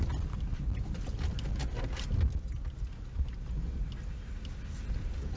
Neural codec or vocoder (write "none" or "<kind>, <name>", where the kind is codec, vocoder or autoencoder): none